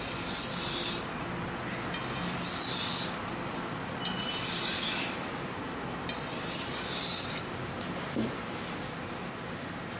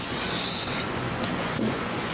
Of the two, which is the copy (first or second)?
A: second